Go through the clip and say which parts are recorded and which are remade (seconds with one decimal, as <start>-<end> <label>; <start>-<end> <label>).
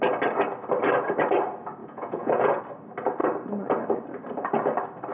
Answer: 0.0-1.8 recorded; 1.8-2.6 remade; 2.6-5.1 recorded